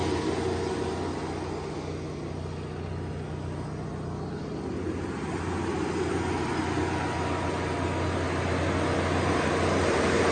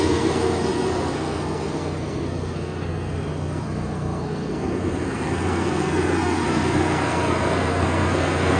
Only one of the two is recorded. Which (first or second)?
first